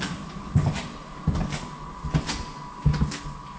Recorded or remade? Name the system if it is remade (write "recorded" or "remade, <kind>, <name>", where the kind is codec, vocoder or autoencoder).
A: recorded